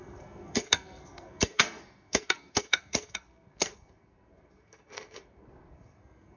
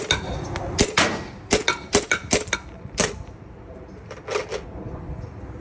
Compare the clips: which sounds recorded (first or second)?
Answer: second